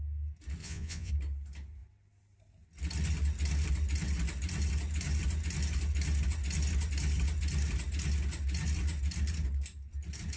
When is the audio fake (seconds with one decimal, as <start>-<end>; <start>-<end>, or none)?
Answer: 0.6-1.1